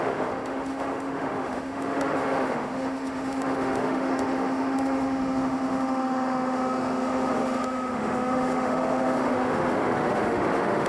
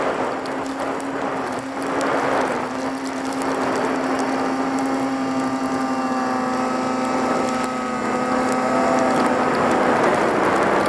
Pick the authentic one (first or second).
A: second